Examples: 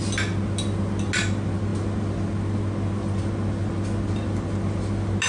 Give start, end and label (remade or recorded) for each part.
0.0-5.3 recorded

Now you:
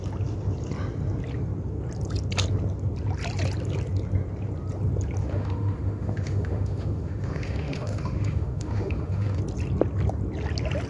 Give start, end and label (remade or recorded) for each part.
0.0-5.2 recorded; 5.2-9.4 remade; 9.4-10.9 recorded

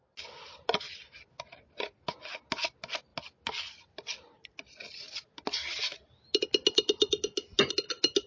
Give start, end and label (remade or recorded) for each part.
0.0-8.3 recorded

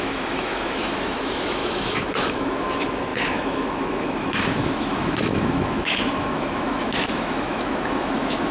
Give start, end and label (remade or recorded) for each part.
0.0-8.5 remade

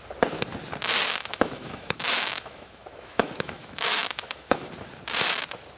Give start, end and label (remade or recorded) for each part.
0.0-1.2 recorded; 1.2-4.7 remade; 4.7-5.8 recorded